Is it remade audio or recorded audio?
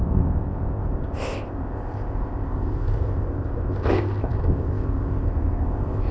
remade